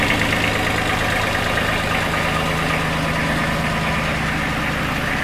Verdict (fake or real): real